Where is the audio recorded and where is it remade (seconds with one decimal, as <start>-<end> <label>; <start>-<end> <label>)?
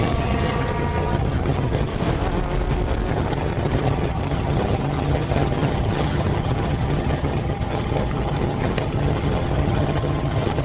0.0-1.9 remade; 1.9-3.1 recorded; 3.1-10.6 remade